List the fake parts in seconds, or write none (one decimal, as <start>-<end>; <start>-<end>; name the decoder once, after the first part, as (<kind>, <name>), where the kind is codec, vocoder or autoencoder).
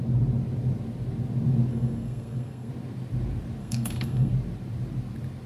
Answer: 1.7-2.7 (codec, SNAC); 3.6-4.3